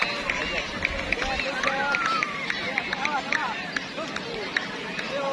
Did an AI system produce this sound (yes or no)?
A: no